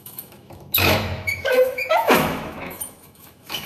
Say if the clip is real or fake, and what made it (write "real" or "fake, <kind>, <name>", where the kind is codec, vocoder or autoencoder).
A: fake, autoencoder, DAC-VAE